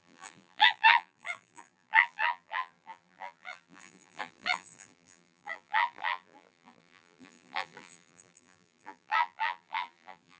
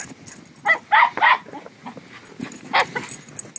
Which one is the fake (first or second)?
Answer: first